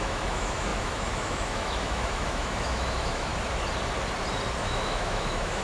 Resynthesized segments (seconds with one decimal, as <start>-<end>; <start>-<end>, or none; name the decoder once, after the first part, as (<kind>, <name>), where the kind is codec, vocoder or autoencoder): 0.0-3.3 (autoencoder, DAC-VAE); 4.6-5.6

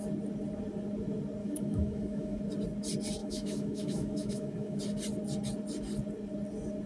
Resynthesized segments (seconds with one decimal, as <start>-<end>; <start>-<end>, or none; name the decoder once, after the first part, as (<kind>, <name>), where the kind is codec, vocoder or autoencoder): 1.4-2.4 (autoencoder, DAC-VAE); 3.2-4.8

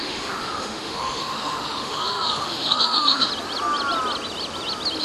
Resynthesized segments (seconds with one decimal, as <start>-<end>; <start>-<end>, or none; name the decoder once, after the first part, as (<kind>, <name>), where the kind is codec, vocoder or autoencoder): 0.0-3.3 (autoencoder, DAC-VAE)

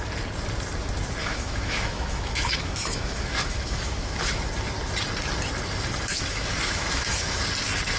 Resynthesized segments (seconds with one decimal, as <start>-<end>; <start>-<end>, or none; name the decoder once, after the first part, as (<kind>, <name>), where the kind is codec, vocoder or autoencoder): 1.2-4.5 (autoencoder, DAC-VAE); 6.1-7.4